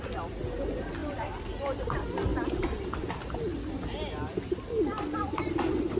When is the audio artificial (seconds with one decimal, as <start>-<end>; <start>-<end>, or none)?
none

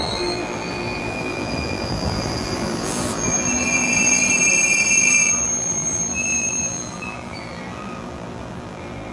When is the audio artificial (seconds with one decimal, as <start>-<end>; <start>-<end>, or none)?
0.0-4.2; 4.9-9.1

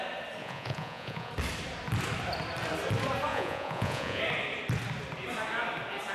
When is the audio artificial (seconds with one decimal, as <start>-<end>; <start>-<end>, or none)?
0.4-1.3; 3.3-4.2

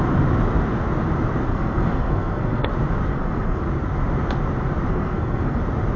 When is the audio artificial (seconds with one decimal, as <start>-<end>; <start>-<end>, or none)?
1.5-2.7; 3.1-3.6; 4.9-5.6